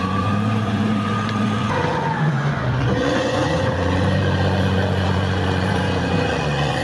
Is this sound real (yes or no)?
no